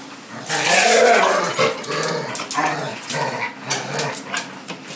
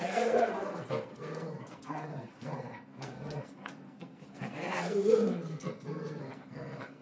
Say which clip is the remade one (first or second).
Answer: second